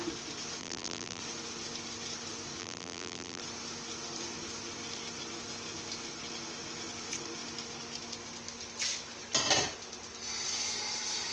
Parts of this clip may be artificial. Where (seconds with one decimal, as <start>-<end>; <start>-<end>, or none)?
0.6-1.2; 2.6-3.4